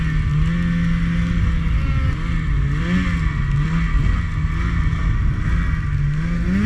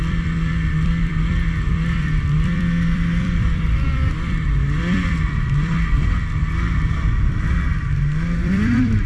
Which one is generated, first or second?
second